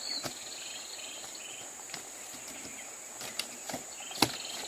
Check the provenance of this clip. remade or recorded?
recorded